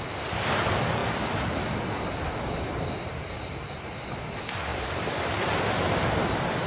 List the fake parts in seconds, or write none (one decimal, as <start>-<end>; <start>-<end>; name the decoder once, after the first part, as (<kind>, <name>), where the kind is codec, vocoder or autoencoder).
4.7-5.7 (vocoder, BigVGAN v2)